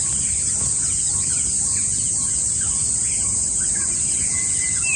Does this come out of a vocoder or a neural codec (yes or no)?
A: no